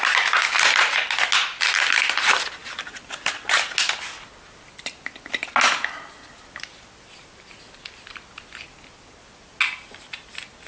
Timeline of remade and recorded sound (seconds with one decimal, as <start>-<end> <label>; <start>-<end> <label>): 0.0-10.7 recorded